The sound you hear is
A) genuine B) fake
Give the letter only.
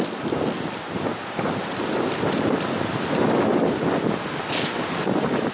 A